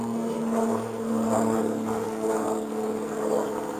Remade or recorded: remade